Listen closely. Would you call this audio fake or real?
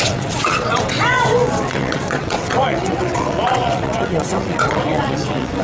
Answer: fake